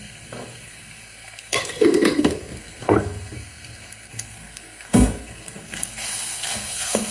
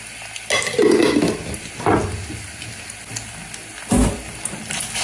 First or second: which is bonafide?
second